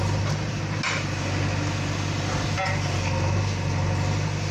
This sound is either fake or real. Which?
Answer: real